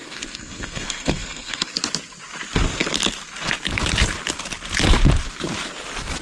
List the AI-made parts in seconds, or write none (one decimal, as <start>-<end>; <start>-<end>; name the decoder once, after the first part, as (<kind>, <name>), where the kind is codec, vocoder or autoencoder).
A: 0.0-1.7 (codec, SNAC)